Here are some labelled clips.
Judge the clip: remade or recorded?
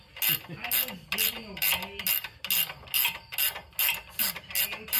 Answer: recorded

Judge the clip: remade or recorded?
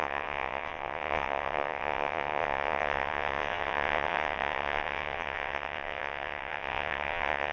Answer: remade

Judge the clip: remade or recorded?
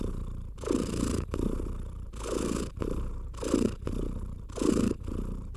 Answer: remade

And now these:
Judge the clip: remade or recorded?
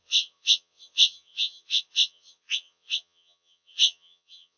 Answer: remade